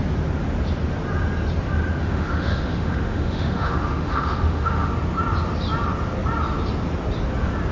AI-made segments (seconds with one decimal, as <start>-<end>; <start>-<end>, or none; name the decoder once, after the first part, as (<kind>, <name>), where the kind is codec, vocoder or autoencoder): 2.0-4.9 (autoencoder, DAC-VAE)